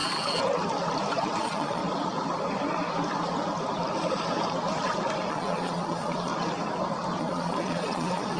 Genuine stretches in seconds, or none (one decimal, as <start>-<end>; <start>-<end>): 0.0-1.4; 1.8-5.3; 6.3-7.2